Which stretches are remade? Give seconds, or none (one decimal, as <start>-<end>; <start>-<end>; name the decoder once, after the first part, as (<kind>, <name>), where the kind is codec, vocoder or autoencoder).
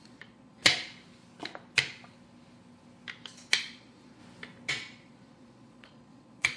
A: 0.0-0.6 (vocoder, Vocos); 3.6-4.2; 4.7-6.6